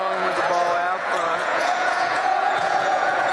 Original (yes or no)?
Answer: no